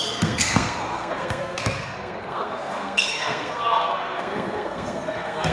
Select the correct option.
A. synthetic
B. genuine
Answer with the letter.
A